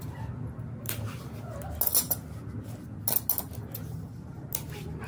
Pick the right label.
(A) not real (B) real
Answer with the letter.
B